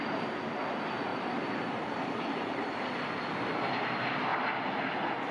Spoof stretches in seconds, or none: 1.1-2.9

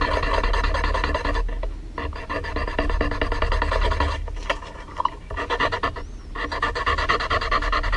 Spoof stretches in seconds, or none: none

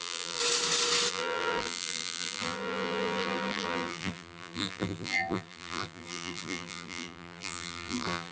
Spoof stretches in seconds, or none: 0.0-0.4; 1.1-8.3

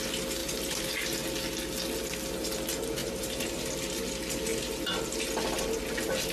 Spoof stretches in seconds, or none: 0.4-0.9; 3.0-3.6; 4.5-5.0